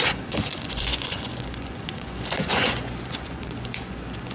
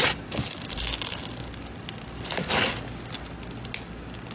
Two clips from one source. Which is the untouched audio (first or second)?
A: second